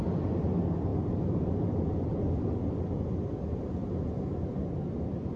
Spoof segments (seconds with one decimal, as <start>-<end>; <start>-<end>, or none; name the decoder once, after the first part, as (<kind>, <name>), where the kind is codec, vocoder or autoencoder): none

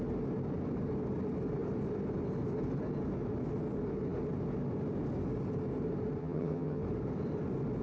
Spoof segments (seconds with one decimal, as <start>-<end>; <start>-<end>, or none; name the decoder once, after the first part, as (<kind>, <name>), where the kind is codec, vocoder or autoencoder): 6.2-6.8 (vocoder, HiFi-GAN)

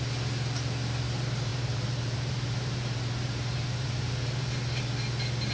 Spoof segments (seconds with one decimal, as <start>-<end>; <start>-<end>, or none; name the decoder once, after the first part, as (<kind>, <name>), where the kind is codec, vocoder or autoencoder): 1.5-4.8 (vocoder, BigVGAN v2)